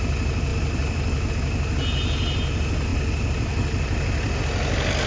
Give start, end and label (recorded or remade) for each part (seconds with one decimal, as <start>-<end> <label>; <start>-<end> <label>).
0.0-0.5 recorded; 0.5-1.3 remade; 1.3-2.9 recorded; 2.9-4.4 remade; 4.4-5.1 recorded